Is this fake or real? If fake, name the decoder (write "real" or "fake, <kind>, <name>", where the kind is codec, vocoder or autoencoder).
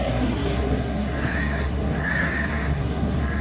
fake, codec, SNAC